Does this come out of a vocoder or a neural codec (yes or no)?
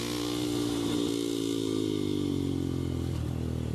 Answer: no